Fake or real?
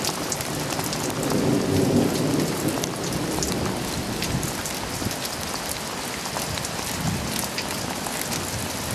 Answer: real